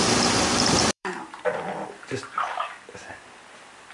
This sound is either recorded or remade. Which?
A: remade